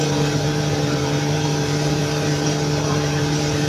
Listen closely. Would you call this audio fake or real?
fake